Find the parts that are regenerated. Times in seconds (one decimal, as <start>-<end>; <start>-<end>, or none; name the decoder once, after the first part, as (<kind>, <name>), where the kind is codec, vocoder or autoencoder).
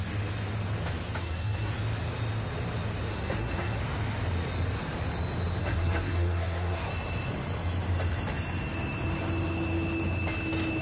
1.2-1.7 (codec, SNAC); 3.1-3.8; 5.6-6.9